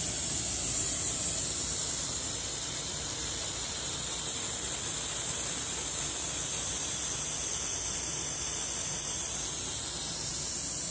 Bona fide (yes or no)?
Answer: no